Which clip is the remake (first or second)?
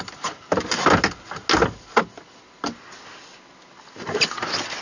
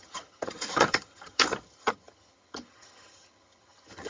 second